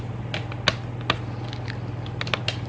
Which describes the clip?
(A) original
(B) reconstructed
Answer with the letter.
A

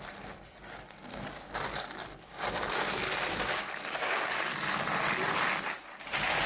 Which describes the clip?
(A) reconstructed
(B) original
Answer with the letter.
B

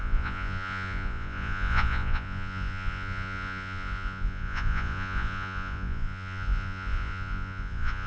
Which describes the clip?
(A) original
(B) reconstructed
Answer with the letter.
B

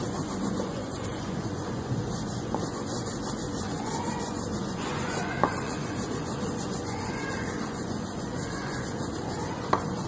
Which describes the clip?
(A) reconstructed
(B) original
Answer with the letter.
A